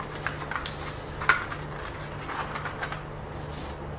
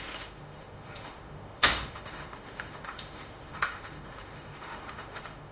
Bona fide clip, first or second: first